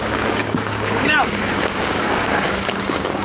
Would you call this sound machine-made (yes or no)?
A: yes